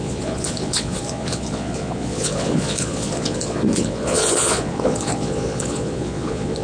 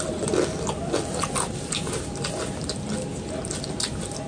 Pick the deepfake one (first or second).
first